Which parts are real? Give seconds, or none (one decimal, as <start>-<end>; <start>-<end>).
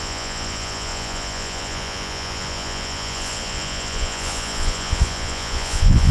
none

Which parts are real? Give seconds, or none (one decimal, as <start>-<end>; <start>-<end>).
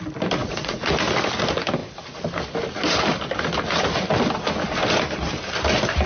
0.0-0.4; 0.9-6.1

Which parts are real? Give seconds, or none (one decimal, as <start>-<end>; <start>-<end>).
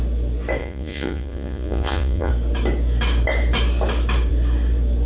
0.0-0.6; 2.3-5.1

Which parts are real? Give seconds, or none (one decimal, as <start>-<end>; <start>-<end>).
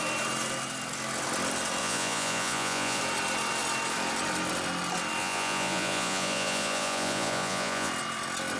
0.0-1.8; 3.0-5.2; 7.9-8.6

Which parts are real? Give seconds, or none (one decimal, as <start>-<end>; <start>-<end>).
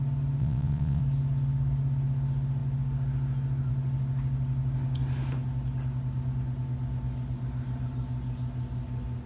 0.0-0.4; 1.0-9.3